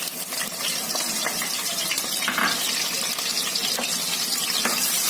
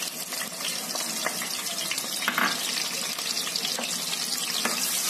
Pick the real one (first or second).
second